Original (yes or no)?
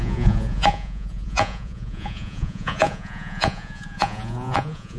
no